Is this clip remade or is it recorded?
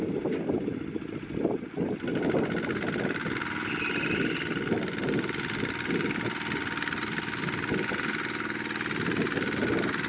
recorded